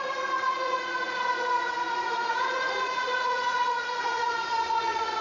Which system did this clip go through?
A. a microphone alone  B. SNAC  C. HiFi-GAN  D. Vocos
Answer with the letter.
D